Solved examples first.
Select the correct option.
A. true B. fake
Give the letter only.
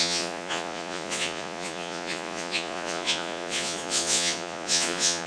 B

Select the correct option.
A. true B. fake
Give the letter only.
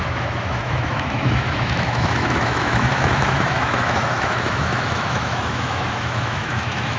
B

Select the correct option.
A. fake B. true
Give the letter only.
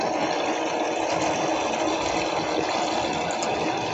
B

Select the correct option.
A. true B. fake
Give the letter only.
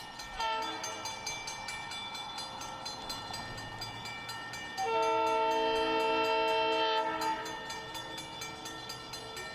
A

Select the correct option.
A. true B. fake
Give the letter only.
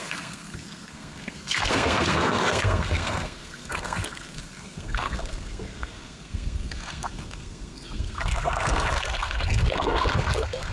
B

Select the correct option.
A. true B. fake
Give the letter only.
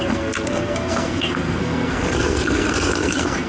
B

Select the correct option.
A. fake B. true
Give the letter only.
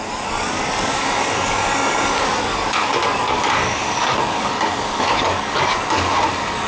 A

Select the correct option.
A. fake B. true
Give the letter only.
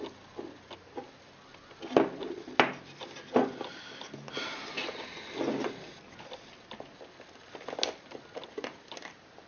B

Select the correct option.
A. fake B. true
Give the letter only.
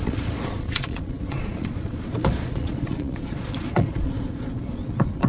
A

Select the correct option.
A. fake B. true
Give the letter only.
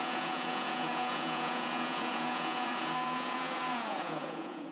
A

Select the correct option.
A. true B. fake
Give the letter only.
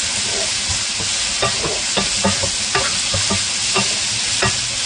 A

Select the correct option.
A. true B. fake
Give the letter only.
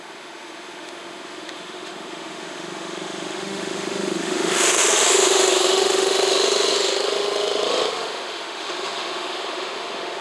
B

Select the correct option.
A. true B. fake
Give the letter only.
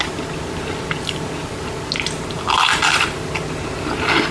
A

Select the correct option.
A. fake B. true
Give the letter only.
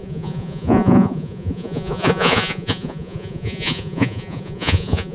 A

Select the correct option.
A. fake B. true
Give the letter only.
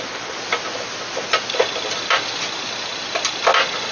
B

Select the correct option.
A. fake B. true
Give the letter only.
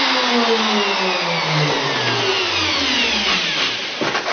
B